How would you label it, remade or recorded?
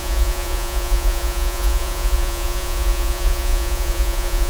remade